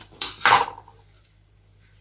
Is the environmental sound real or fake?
fake